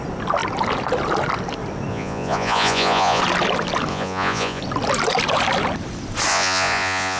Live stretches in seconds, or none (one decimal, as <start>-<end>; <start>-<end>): 0.0-1.9; 3.2-3.9; 4.6-6.3

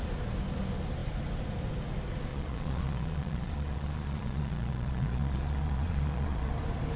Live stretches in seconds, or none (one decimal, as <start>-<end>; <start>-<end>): 0.0-2.3; 6.5-7.0

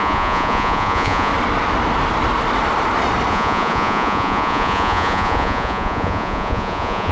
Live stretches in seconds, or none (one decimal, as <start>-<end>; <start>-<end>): 1.3-3.3

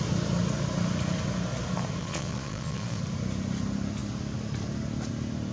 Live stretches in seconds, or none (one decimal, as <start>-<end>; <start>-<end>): 0.0-2.0; 3.0-5.5